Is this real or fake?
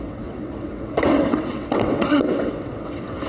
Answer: fake